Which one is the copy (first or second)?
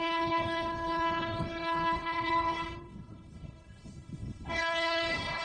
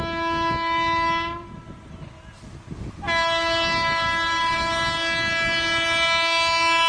first